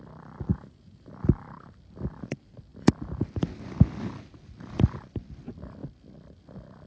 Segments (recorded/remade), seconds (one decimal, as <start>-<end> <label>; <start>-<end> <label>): 0.0-0.5 recorded; 0.5-1.1 remade; 1.1-6.9 recorded